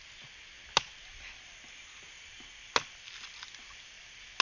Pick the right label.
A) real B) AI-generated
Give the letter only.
A